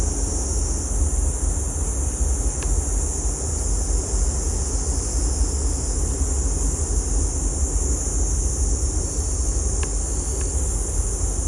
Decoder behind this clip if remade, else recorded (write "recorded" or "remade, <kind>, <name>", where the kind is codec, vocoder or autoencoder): recorded